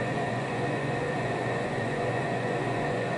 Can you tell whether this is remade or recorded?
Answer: remade